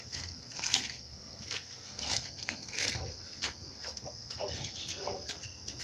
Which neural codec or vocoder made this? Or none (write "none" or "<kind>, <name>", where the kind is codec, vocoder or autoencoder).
codec, SNAC